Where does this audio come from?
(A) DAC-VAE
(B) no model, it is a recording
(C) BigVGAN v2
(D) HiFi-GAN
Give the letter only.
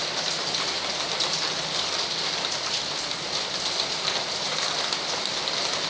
B